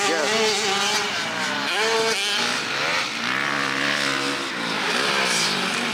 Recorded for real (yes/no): yes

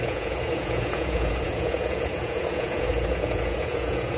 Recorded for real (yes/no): no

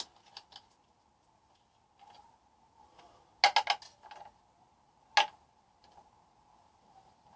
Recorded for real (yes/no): yes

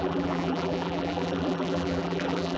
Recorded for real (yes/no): no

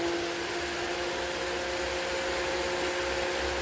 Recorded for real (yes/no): yes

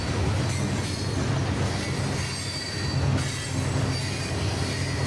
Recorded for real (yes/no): yes